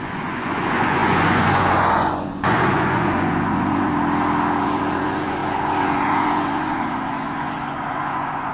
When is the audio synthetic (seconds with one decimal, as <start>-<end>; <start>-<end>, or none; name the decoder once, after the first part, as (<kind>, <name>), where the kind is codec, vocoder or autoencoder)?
0.0-3.9 (vocoder, Vocos); 4.6-8.5